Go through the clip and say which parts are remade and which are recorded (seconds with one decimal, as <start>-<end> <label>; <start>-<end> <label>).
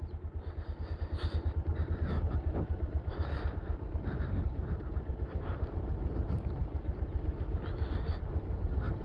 0.0-9.0 recorded